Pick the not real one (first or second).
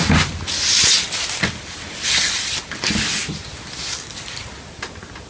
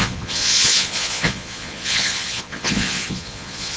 second